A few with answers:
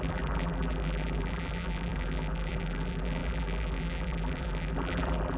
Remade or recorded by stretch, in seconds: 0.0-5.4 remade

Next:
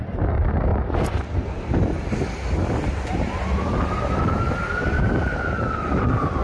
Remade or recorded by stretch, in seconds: 0.0-6.4 recorded

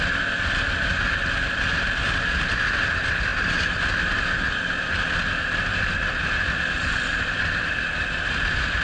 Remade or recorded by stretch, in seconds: 0.0-8.8 recorded